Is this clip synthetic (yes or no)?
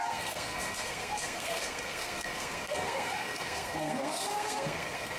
yes